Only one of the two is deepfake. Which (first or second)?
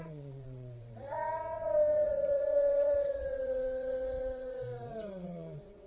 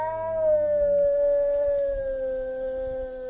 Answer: first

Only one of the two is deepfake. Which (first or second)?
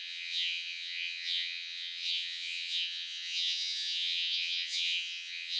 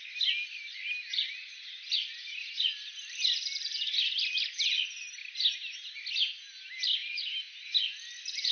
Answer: first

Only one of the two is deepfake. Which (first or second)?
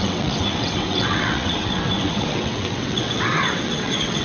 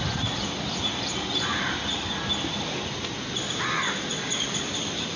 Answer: first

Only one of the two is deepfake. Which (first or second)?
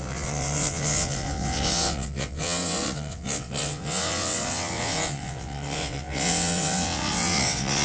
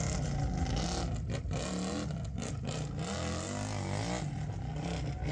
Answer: first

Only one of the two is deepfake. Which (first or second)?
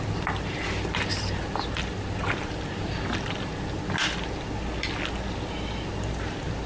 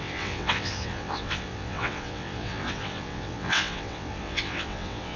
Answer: second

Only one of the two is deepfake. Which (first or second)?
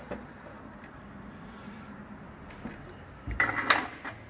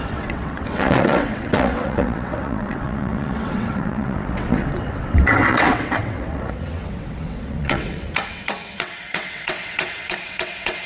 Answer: second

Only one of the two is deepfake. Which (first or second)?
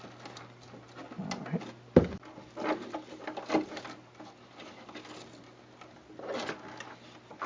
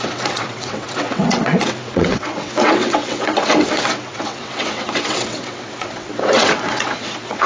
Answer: second